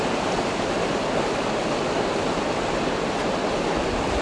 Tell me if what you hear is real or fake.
real